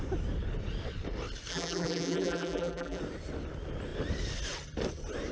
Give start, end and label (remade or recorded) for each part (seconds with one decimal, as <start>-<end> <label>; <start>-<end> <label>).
0.0-1.5 recorded; 1.5-3.0 remade; 3.0-5.3 recorded